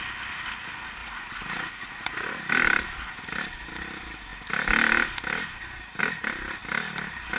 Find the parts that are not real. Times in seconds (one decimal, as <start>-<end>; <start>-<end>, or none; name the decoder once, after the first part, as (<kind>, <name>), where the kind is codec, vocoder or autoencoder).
1.0-2.5 (vocoder, Vocos)